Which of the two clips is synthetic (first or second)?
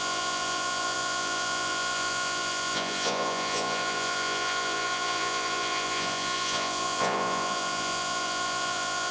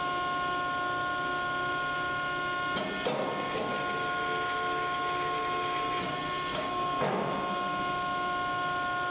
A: first